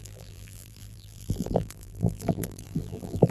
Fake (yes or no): yes